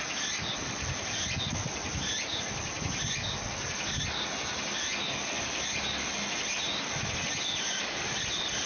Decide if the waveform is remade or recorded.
recorded